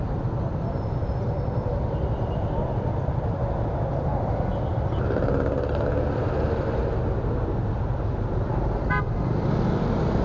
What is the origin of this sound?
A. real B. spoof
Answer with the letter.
A